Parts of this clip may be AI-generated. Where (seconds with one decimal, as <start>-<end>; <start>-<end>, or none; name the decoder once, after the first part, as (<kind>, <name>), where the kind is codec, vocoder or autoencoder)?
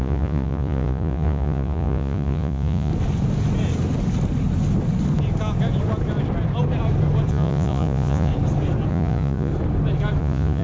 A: 0.0-2.9 (vocoder, Vocos); 7.3-8.3; 8.9-9.5; 10.2-10.6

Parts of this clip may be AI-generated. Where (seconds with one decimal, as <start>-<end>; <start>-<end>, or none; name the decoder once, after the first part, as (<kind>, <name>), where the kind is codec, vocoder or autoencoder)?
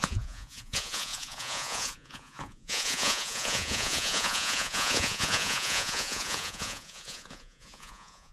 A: 0.0-8.3 (vocoder, Vocos)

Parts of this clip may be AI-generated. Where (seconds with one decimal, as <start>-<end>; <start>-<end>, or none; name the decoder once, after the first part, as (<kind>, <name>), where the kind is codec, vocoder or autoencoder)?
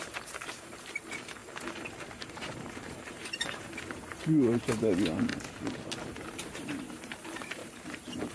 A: 0.0-1.4 (vocoder, BigVGAN v2); 2.1-5.3; 6.1-8.3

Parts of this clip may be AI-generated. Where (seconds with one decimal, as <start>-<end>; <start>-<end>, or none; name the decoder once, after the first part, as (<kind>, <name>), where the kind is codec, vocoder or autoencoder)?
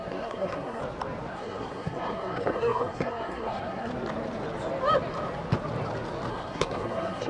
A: 0.0-0.8 (codec, SNAC); 1.3-3.9; 6.3-7.3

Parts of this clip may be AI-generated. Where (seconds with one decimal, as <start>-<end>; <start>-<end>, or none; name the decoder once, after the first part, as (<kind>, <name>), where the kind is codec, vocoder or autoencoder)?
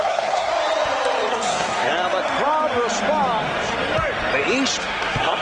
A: 0.0-0.5 (codec, SNAC); 1.3-1.9; 4.8-5.4